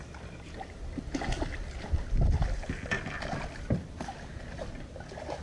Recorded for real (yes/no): yes